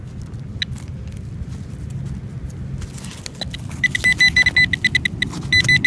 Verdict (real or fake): real